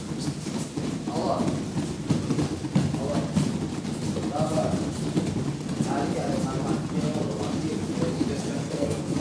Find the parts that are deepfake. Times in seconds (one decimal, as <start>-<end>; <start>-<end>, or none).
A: 8.6-9.2